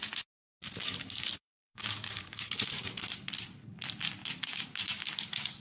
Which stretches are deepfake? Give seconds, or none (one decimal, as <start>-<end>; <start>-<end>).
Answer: 0.8-3.0; 4.2-5.6